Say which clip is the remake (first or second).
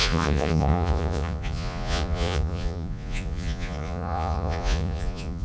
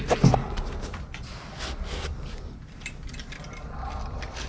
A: first